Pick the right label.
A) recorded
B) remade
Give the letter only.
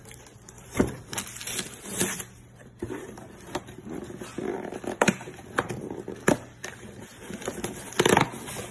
B